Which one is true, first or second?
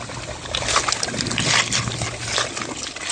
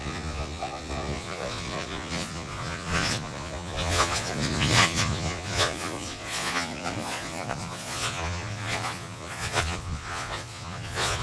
first